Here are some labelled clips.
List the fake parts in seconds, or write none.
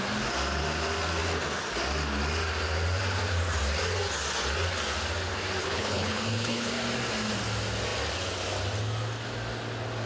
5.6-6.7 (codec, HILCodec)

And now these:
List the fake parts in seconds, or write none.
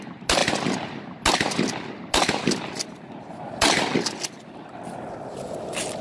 none